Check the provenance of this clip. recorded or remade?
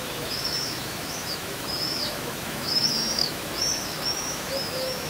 remade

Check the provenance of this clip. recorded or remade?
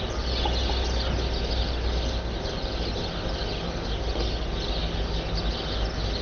recorded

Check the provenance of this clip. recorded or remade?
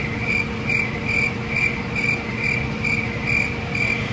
recorded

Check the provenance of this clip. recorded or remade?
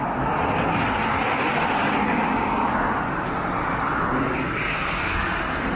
recorded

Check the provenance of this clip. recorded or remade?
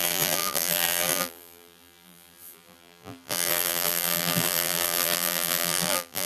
remade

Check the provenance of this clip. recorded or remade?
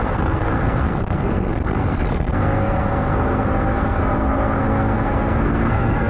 remade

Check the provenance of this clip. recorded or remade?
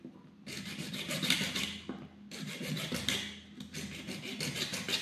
recorded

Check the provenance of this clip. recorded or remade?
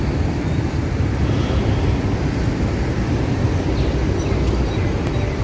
recorded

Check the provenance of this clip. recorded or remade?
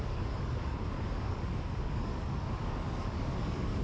remade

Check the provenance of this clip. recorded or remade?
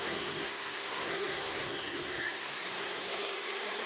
remade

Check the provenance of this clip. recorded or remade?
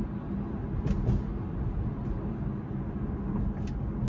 recorded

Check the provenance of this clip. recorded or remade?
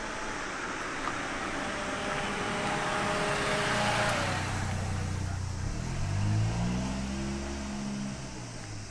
recorded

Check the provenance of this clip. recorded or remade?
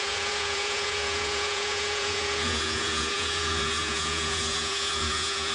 remade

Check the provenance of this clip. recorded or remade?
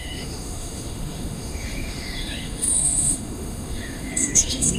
remade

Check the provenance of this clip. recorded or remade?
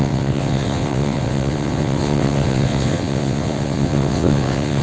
remade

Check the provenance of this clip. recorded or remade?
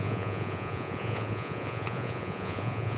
remade